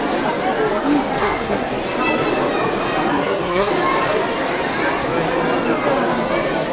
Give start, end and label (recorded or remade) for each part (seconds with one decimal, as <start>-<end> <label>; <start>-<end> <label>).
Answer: 0.0-1.2 recorded; 1.2-1.7 remade; 1.7-3.1 recorded; 3.1-3.7 remade; 3.7-6.7 recorded